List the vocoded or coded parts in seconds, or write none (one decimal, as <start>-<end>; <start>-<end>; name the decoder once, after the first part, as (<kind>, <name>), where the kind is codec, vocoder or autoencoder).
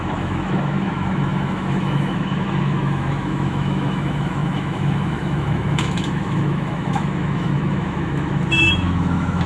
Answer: 0.0-9.5 (autoencoder, DAC-VAE)